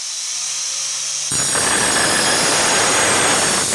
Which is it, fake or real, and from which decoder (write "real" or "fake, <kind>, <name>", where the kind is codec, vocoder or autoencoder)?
real